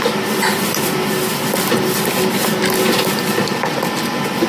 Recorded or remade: recorded